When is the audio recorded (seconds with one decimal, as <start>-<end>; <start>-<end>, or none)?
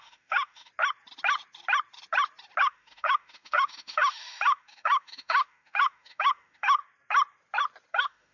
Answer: 0.7-2.6; 6.8-7.9